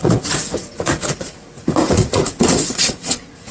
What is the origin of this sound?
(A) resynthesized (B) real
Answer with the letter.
A